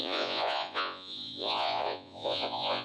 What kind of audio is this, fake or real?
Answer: fake